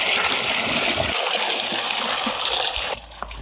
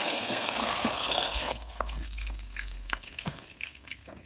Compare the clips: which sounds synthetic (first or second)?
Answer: second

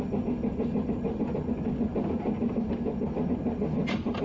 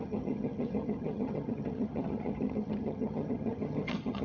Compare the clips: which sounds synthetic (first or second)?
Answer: second